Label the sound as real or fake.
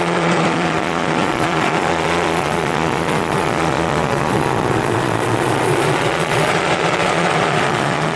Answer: fake